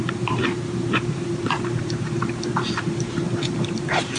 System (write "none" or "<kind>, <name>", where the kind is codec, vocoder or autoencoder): vocoder, BigVGAN v2